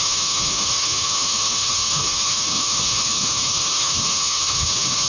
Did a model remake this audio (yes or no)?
yes